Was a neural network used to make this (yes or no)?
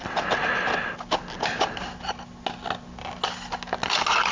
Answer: no